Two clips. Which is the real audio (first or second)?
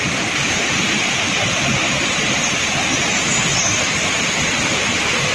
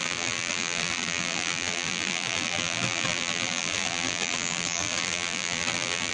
first